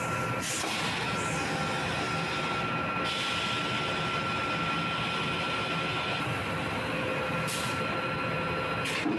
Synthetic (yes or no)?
no